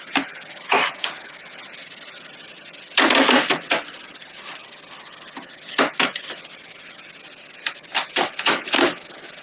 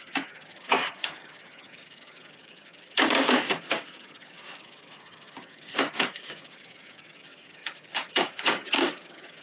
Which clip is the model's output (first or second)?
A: second